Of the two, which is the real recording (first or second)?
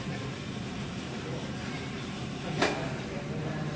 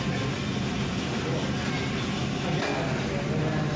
second